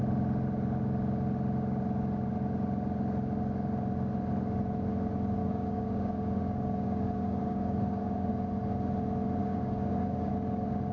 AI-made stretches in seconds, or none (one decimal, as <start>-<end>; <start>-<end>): 5.4-8.3; 9.4-10.3